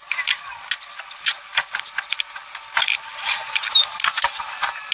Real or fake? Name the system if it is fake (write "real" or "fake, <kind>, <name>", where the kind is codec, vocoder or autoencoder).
real